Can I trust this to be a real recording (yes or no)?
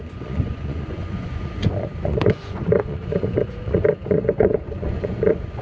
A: no